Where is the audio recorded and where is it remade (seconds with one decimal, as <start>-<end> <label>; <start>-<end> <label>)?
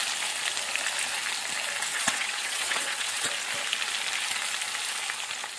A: 0.0-1.9 recorded; 1.9-3.3 remade; 3.3-5.6 recorded